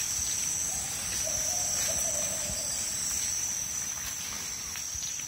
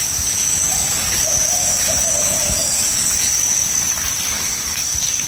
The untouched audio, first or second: first